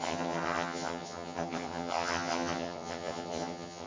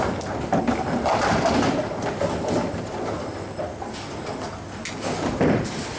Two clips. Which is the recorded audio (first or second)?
second